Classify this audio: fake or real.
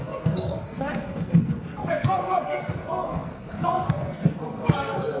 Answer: fake